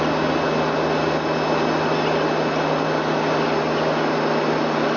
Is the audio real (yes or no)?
yes